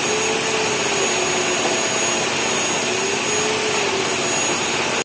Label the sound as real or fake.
real